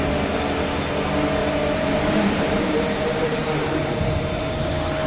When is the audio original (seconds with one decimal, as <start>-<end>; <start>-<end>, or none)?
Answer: 0.0-1.4; 4.5-5.1